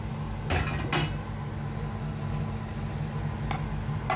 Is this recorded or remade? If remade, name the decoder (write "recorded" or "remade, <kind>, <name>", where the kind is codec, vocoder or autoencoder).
recorded